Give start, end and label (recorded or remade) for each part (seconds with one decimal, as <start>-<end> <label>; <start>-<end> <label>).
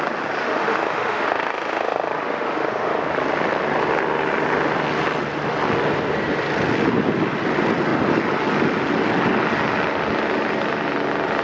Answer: 0.0-0.4 recorded; 0.4-3.0 remade; 3.0-11.4 recorded